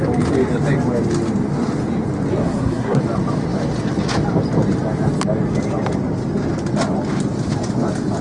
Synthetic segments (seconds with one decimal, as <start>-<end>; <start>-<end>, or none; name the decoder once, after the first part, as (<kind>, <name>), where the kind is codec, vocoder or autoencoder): 2.3-3.0 (codec, SNAC)